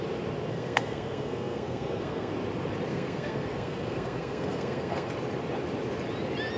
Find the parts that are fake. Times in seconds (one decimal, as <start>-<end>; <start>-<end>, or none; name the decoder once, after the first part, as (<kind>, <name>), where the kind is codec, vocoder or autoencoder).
0.5-2.3 (codec, SNAC); 2.9-5.1